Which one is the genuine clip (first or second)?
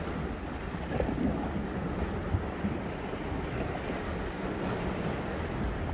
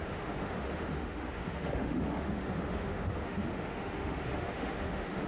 first